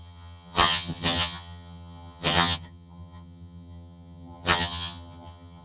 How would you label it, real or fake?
fake